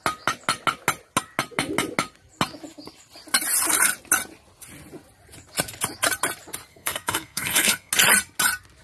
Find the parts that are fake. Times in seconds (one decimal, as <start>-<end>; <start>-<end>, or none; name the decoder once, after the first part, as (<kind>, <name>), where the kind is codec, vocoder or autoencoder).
6.7-7.9 (codec, SNAC)